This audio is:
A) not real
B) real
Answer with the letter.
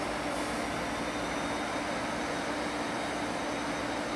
B